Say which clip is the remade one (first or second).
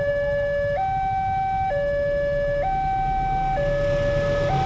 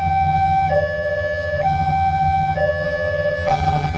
second